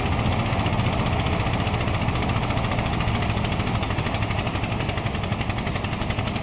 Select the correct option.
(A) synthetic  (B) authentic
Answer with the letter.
B